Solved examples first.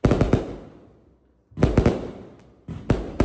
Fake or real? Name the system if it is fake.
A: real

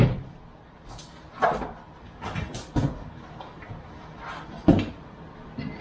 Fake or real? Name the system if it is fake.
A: real